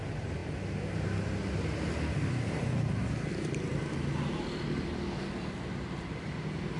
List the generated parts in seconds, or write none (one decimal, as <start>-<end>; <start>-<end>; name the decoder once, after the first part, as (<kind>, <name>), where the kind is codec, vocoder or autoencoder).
0.0-0.4 (vocoder, BigVGAN v2); 3.3-3.7; 5.2-6.8